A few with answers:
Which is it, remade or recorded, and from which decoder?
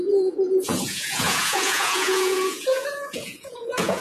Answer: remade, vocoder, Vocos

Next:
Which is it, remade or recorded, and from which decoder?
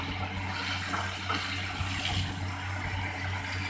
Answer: recorded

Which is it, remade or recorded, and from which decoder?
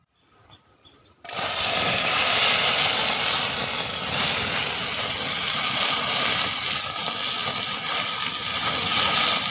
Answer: recorded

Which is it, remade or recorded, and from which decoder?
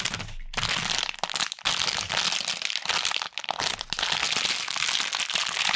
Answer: recorded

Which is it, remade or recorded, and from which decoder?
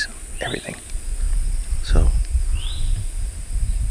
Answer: recorded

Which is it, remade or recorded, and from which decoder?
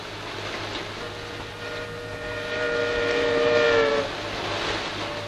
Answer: recorded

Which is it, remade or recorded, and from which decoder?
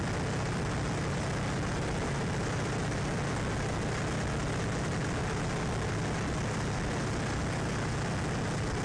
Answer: recorded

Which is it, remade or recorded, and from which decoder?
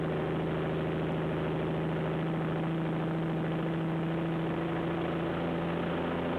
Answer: recorded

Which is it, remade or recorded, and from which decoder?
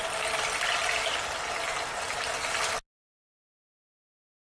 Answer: recorded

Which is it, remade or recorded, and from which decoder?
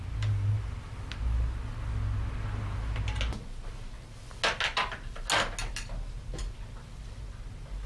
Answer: recorded